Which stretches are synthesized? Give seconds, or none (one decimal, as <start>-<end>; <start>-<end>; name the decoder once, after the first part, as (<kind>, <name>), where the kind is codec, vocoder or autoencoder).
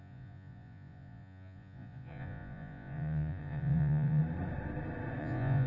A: 0.0-4.2 (vocoder, Vocos); 5.2-5.7